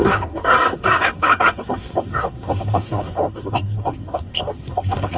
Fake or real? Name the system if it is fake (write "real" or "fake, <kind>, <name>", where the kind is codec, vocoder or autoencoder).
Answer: fake, codec, SNAC